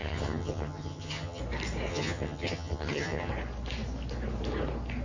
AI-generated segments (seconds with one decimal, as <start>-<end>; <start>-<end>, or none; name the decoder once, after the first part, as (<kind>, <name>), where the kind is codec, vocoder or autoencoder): 0.0-1.4 (vocoder, HiFi-GAN); 1.9-3.3